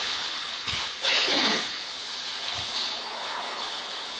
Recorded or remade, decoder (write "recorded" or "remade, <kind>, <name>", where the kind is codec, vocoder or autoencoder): remade, codec, HILCodec